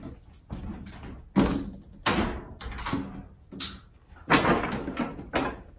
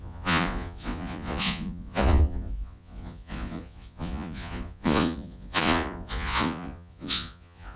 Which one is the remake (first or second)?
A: second